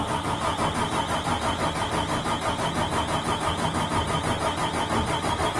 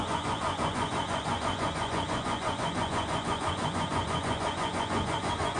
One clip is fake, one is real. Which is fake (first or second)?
second